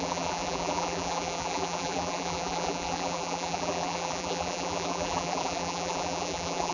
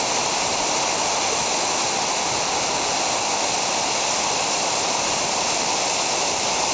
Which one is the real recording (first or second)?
second